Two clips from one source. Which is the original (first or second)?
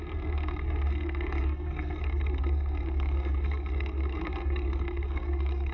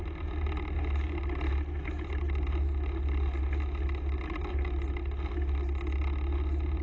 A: second